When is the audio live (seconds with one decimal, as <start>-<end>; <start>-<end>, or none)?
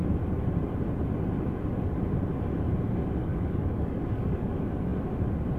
0.0-3.2; 4.5-5.6